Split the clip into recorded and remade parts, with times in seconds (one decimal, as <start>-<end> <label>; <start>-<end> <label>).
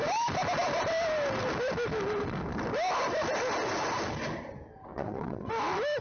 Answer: 0.0-4.9 recorded; 4.9-5.5 remade; 5.5-6.0 recorded